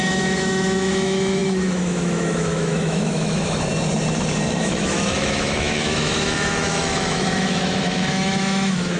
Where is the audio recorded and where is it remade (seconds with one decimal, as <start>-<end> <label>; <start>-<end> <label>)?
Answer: 0.0-3.7 remade; 3.7-4.6 recorded; 4.6-9.0 remade